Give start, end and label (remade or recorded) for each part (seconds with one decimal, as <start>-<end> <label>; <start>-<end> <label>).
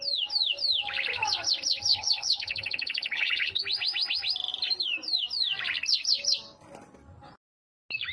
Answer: 0.0-1.9 recorded; 1.9-3.6 remade; 3.6-8.1 recorded